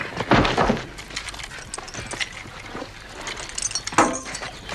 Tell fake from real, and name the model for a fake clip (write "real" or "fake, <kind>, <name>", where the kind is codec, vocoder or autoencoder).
real